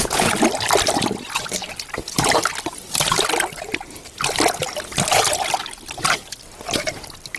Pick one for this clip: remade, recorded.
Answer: recorded